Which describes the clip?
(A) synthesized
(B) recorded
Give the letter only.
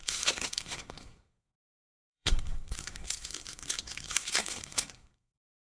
A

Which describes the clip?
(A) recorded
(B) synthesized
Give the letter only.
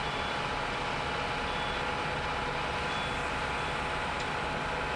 A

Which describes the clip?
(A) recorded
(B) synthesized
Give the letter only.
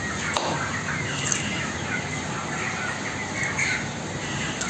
A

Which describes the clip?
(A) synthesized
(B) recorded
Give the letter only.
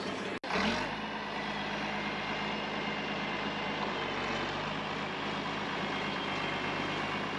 B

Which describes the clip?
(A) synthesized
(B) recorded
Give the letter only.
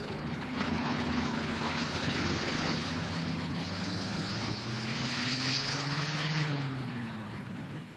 A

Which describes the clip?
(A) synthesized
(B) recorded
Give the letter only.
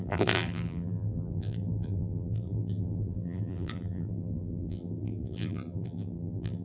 A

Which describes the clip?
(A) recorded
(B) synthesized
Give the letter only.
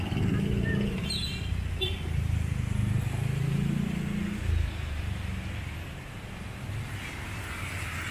A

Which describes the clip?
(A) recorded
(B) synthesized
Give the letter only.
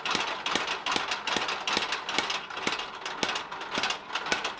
A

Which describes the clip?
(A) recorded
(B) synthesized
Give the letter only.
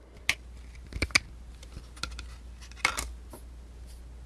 A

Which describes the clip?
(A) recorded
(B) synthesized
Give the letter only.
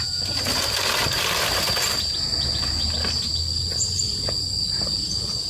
A